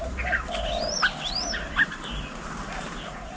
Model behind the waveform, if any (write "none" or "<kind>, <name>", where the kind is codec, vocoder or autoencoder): none